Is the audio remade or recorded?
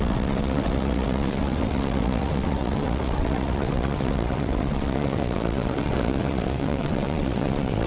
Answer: remade